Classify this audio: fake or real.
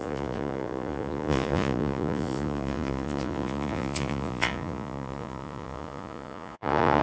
fake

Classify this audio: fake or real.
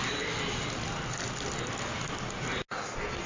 real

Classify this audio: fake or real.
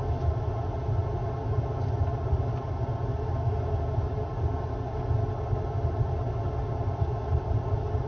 real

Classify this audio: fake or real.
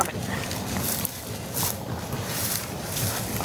real